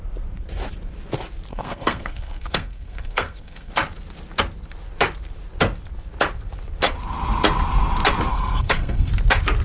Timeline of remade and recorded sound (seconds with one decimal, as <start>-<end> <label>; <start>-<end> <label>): 0.0-1.5 recorded; 1.5-3.7 remade; 3.7-8.3 recorded; 8.3-9.1 remade; 9.1-9.6 recorded